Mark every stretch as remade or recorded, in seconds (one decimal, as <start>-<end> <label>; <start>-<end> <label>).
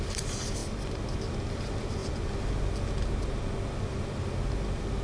0.0-5.0 recorded